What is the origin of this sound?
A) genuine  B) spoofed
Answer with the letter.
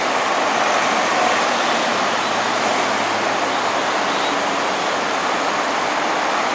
A